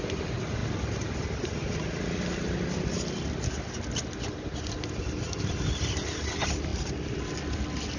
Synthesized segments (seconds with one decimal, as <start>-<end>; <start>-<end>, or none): none